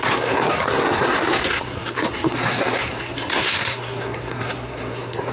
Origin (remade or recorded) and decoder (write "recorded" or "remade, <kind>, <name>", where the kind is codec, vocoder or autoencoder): remade, codec, SNAC